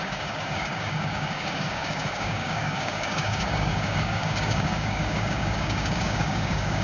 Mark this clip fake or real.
fake